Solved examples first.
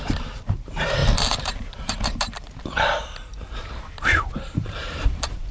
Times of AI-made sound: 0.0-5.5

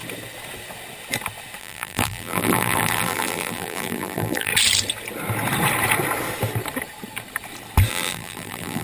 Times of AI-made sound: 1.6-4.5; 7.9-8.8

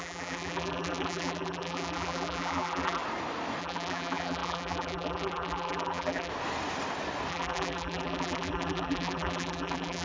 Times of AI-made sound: 0.0-3.0; 3.6-6.3; 7.3-10.0

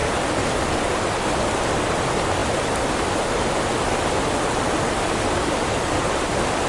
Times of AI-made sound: none

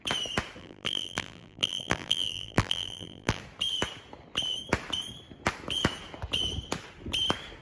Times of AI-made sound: 0.6-3.4

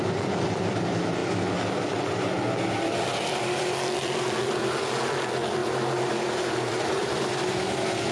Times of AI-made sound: 0.0-1.2; 1.7-5.6; 6.5-8.1